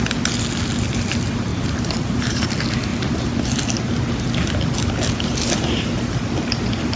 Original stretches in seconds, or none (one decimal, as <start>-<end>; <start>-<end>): 0.0-1.5; 2.5-7.0